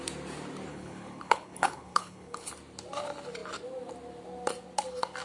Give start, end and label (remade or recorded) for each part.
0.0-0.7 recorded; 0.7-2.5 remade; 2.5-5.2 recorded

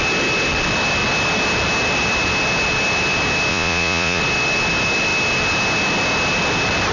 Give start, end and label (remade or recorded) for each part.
0.0-3.5 recorded; 3.5-4.2 remade; 4.2-6.9 recorded

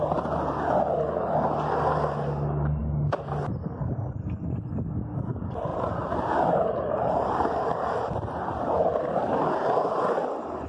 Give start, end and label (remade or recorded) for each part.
0.0-5.7 recorded; 5.7-9.2 remade; 9.2-10.7 recorded

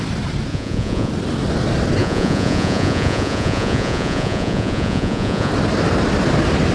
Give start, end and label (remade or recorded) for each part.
0.0-0.5 recorded; 0.5-1.1 remade; 1.1-2.0 recorded; 2.0-5.5 remade; 5.5-6.7 recorded

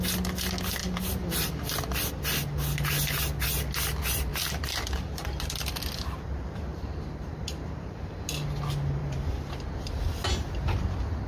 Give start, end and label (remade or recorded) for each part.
0.0-0.8 recorded; 0.8-2.1 remade; 2.1-4.3 recorded; 4.3-5.4 remade; 5.4-6.7 recorded; 6.7-8.2 remade; 8.2-9.0 recorded; 9.0-9.5 remade; 9.5-11.3 recorded

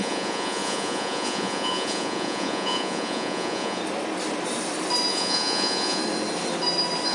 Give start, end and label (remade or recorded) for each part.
0.0-3.8 remade; 3.8-5.1 recorded; 5.1-6.0 remade; 6.0-7.1 recorded